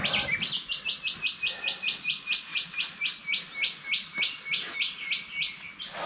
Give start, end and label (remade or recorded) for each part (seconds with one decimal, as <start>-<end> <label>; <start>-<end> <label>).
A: 0.0-6.1 recorded